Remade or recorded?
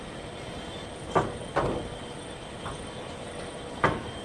recorded